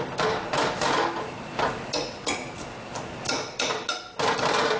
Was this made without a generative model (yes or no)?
yes